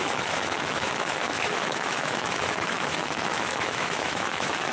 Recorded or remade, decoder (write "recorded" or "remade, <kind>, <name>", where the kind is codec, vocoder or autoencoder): remade, autoencoder, DAC-VAE